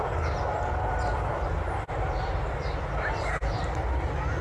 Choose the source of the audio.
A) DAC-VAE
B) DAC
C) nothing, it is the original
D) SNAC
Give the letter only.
C